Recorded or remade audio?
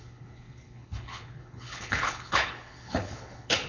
remade